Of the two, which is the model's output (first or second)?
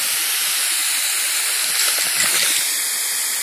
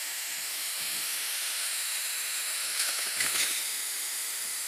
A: second